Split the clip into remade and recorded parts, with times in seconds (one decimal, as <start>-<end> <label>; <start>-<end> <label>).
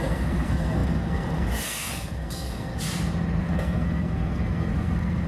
0.0-2.7 remade; 2.7-3.4 recorded; 3.4-5.3 remade